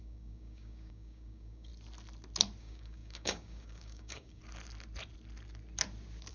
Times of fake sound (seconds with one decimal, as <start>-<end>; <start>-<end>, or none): 0.0-1.7; 2.6-4.4

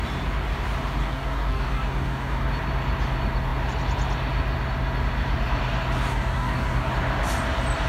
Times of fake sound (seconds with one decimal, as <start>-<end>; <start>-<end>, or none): 1.0-2.5; 6.1-6.9

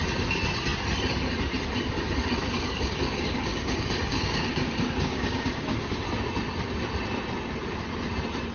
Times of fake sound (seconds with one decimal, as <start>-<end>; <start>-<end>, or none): 2.4-6.0

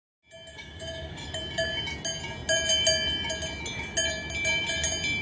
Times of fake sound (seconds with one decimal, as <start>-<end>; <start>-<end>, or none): 0.5-1.3

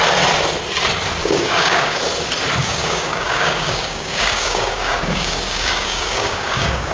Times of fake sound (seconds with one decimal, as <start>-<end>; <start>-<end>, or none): 1.2-2.0; 2.6-6.9